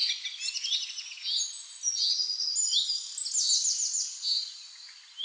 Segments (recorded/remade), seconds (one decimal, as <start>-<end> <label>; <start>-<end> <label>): 0.0-5.2 recorded

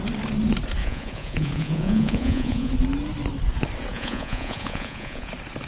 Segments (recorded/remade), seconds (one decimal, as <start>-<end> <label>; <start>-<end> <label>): 0.0-0.8 recorded; 0.8-2.7 remade; 2.7-3.9 recorded; 3.9-5.3 remade; 5.3-5.7 recorded

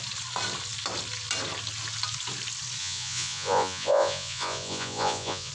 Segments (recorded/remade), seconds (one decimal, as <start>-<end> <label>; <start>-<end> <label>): 0.0-2.8 recorded; 2.8-5.5 remade

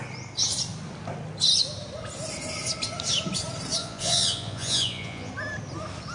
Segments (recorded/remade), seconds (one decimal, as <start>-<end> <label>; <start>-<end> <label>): 0.0-3.8 recorded; 3.8-5.3 remade; 5.3-6.1 recorded

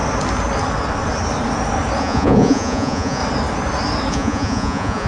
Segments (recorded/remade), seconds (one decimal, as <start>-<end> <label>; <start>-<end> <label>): 0.0-2.0 recorded; 2.0-3.2 remade; 3.2-4.1 recorded; 4.1-5.1 remade

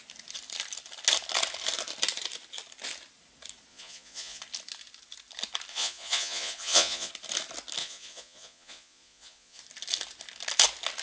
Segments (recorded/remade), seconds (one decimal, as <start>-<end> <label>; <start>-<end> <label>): 0.0-3.7 recorded; 3.7-4.4 remade; 4.4-5.7 recorded; 5.7-7.1 remade; 7.1-7.8 recorded; 7.8-9.6 remade; 9.6-11.0 recorded